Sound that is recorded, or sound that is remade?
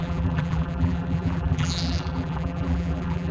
remade